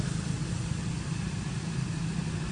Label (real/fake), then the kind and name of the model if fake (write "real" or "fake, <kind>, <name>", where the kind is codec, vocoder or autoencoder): real